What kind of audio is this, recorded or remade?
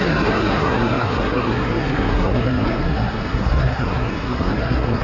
remade